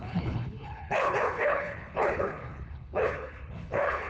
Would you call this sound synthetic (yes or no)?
yes